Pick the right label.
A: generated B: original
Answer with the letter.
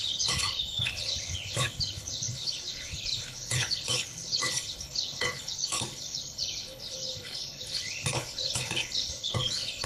A